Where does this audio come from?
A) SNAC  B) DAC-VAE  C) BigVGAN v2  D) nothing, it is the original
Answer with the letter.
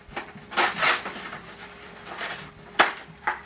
C